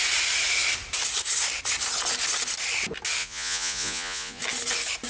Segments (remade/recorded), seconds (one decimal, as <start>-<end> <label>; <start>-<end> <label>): 0.0-3.2 recorded; 3.2-4.4 remade; 4.4-5.1 recorded